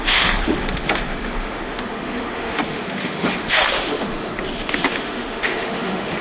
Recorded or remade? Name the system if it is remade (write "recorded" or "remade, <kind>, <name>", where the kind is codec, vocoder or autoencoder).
remade, autoencoder, DAC-VAE